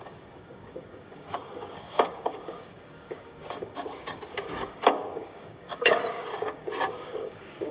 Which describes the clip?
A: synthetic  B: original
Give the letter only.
A